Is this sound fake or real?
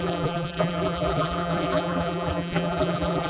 fake